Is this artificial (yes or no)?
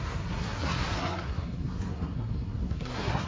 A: yes